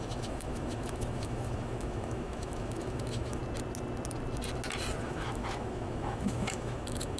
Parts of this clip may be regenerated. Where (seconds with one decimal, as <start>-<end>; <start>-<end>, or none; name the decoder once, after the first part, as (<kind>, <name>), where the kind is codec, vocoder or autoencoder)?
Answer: 0.0-3.4 (autoencoder, DAC-VAE); 5.0-7.2